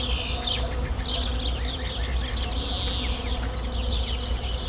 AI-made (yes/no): no